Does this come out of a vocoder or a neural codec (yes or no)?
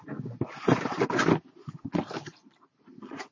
yes